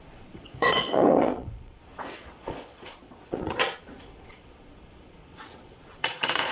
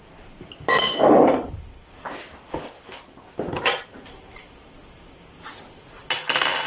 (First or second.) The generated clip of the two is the first